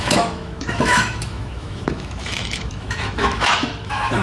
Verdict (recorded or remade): remade